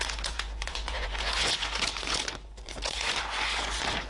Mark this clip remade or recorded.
remade